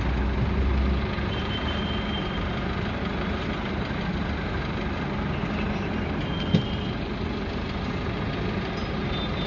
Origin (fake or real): real